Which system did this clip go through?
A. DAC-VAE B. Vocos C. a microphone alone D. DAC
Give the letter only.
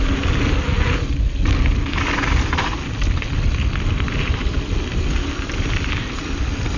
C